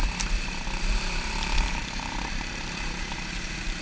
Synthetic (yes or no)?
yes